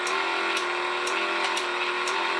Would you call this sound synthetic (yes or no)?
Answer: no